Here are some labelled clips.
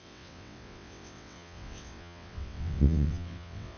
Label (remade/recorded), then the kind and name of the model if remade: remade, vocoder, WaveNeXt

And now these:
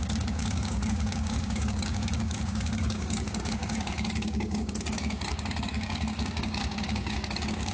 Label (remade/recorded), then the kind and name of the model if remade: remade, codec, DAC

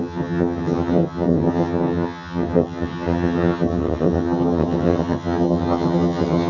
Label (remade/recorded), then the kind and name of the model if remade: remade, vocoder, HiFi-GAN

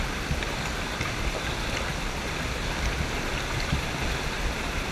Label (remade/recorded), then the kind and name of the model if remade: recorded